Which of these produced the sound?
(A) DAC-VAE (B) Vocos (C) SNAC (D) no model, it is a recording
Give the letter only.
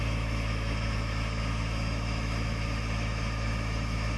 A